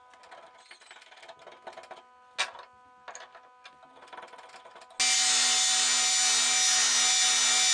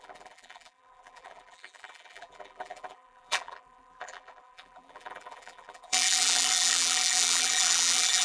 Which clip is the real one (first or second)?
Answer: first